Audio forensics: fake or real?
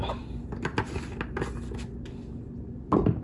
real